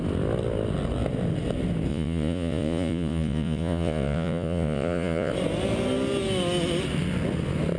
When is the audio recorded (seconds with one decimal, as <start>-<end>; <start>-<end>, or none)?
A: 0.0-1.9; 5.3-7.8